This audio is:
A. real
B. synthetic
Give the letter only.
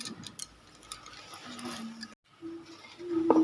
A